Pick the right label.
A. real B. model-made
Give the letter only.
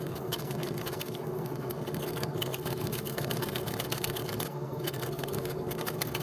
B